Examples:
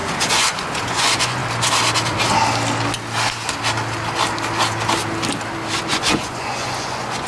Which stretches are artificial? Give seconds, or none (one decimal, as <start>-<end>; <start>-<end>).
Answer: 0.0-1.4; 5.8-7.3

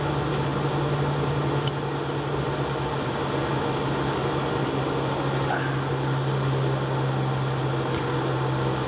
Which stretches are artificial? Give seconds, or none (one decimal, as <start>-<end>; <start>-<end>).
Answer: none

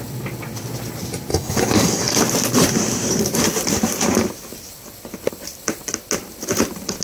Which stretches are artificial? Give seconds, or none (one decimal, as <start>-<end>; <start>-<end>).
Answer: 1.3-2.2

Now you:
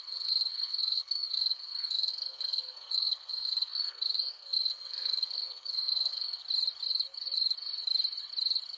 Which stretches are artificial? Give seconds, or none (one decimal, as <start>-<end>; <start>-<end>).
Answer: 0.0-6.4

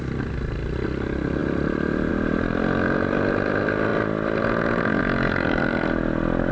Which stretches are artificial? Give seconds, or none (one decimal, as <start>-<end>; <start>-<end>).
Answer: none

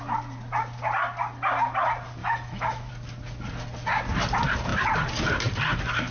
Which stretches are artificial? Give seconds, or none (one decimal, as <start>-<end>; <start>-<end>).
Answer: 2.2-2.9